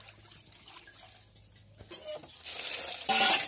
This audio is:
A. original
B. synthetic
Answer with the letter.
A